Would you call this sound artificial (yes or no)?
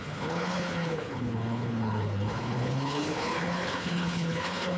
yes